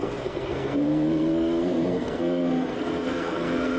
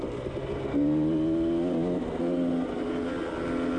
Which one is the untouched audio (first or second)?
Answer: second